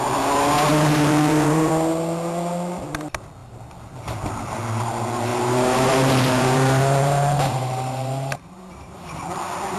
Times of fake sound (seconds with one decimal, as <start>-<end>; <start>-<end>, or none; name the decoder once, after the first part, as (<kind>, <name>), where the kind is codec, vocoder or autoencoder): 0.7-1.7 (vocoder, BigVGAN v2); 5.3-9.2